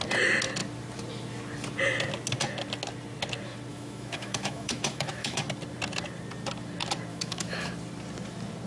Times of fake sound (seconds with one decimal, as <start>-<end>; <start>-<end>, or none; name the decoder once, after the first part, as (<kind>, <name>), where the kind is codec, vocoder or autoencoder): 3.7-5.4 (autoencoder, DAC-VAE); 7.1-7.7